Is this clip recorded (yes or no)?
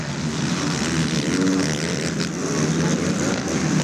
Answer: yes